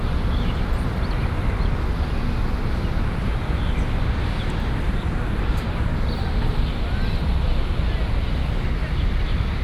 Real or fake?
real